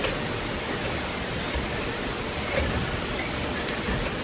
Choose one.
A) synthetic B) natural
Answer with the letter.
B